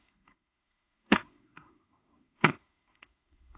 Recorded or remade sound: remade